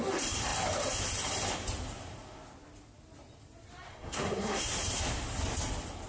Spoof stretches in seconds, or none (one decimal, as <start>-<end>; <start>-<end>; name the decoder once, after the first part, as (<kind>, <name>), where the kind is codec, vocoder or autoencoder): 3.9-4.6 (codec, SNAC)